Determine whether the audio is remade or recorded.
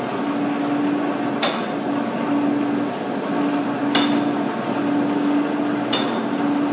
recorded